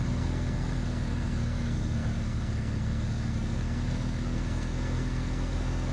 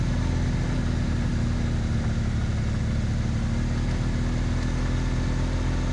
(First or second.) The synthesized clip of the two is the first